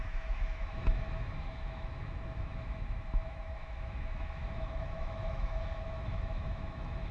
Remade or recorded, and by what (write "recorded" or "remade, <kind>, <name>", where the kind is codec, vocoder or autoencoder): remade, autoencoder, DAC-VAE